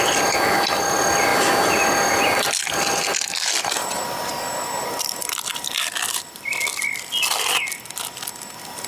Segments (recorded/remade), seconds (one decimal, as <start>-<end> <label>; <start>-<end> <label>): 0.0-3.1 recorded; 3.1-7.5 remade; 7.5-8.9 recorded